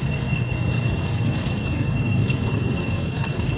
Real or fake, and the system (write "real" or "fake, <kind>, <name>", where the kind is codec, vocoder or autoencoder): fake, codec, SNAC